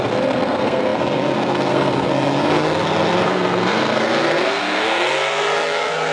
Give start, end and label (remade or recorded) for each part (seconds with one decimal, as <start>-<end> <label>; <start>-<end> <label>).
0.0-6.1 remade